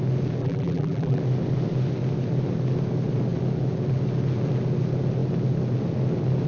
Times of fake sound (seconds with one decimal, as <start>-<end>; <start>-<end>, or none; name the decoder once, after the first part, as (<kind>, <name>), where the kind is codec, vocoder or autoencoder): 0.4-1.2 (vocoder, BigVGAN v2)